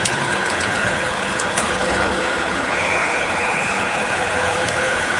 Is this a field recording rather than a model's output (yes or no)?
no